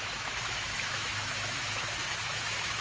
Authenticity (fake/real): fake